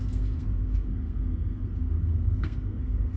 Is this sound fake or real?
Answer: fake